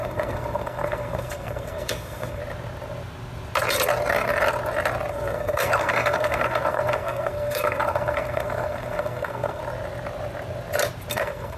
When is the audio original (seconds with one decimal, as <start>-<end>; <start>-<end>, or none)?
2.4-5.1; 9.6-11.1

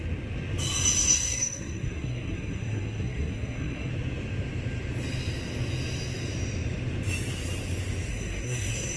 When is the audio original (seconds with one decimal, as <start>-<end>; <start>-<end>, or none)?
0.0-1.0; 3.9-8.1

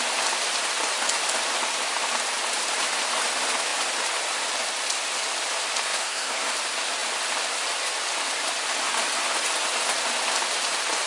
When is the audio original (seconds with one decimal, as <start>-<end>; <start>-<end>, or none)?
0.0-6.0; 6.5-11.1

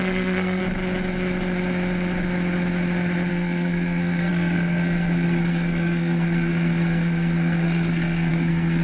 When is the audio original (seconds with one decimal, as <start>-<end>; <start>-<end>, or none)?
0.6-3.3

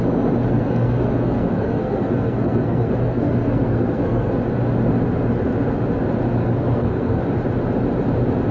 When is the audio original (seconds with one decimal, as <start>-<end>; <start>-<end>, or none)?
0.0-0.4; 4.3-6.4; 7.2-8.5

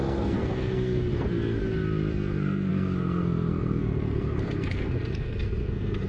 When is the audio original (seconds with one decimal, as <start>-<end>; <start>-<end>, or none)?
1.6-2.1

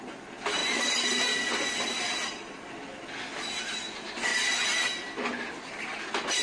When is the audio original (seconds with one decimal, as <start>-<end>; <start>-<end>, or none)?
0.0-6.4

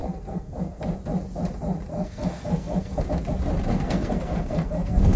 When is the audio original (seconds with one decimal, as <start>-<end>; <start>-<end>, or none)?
0.8-1.9; 3.0-3.7